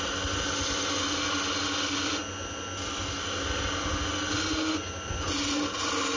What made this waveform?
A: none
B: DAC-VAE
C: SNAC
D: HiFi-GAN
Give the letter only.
A